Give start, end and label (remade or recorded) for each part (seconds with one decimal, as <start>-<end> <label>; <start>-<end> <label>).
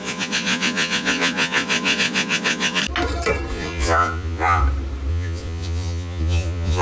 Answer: 0.0-2.8 remade; 2.8-3.5 recorded; 3.5-4.6 remade; 4.6-5.1 recorded; 5.1-6.8 remade